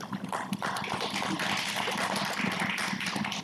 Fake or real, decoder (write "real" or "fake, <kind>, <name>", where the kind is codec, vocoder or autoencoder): real